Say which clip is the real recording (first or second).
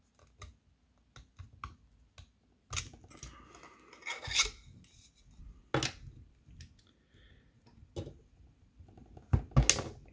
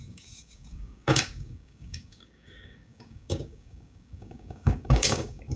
first